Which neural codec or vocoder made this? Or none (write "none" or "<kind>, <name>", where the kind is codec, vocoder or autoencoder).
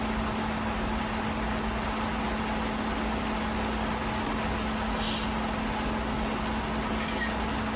none